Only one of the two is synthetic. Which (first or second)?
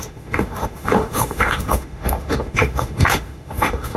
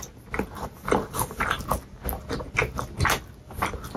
first